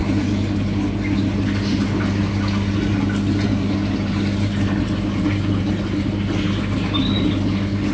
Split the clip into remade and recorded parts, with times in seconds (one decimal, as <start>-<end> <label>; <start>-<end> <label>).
0.0-7.9 recorded